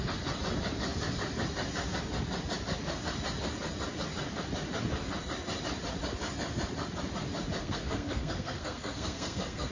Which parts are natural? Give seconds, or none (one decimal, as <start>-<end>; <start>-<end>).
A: 0.0-7.6